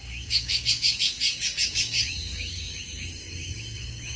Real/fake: fake